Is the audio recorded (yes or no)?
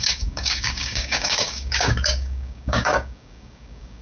no